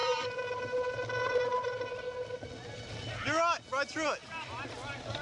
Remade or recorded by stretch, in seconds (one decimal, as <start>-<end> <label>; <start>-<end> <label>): 0.0-0.6 remade; 0.6-4.2 recorded; 4.2-5.2 remade

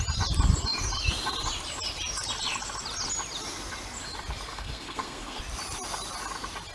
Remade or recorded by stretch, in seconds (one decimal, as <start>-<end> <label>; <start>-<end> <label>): 0.0-4.5 recorded; 4.5-5.4 remade; 5.4-6.7 recorded